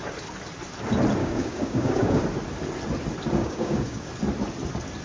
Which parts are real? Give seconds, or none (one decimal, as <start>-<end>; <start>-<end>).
0.0-1.2; 2.2-3.4; 4.1-5.0

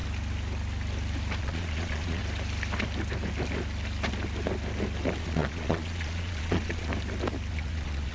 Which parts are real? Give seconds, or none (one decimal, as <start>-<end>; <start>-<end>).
0.0-1.4; 2.2-5.2; 6.9-7.5

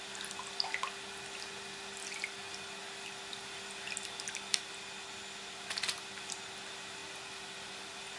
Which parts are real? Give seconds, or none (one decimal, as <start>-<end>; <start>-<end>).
0.0-8.2

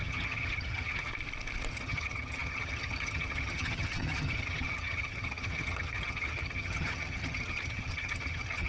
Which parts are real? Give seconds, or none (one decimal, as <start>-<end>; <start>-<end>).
1.1-1.7

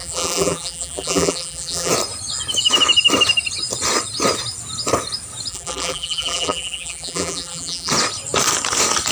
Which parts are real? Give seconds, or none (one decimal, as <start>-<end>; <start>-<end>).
1.9-5.5; 7.9-9.1

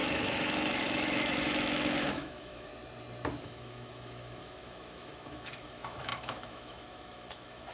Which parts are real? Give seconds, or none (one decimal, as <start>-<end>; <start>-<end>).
2.7-3.4